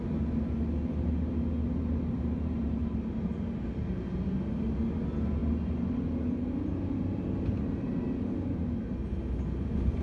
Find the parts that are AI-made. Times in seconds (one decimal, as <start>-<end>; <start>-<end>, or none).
1.6-3.3